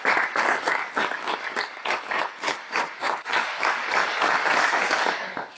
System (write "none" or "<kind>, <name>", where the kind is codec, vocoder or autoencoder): codec, DAC